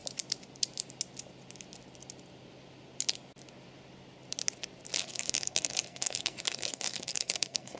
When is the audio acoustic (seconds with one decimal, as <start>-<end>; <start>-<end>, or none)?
0.0-5.0